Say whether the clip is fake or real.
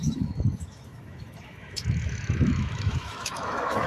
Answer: fake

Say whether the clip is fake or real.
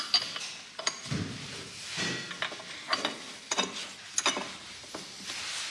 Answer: real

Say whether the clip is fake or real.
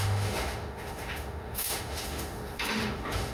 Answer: fake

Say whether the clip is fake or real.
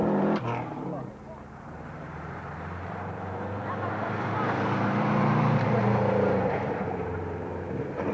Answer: fake